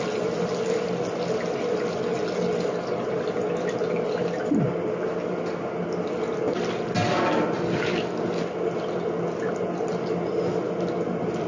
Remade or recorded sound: recorded